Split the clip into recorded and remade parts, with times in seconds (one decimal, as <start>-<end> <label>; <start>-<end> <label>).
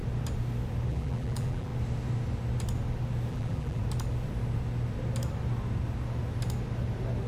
0.0-0.9 recorded; 0.9-1.7 remade; 1.7-3.3 recorded; 3.3-3.8 remade; 3.8-7.3 recorded